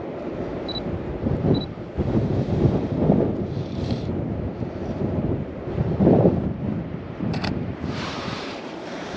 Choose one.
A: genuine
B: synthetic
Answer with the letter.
B